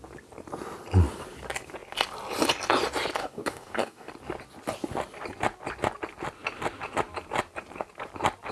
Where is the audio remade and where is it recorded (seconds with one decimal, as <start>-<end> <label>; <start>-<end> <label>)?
0.0-3.2 recorded; 3.2-4.1 remade; 4.1-8.5 recorded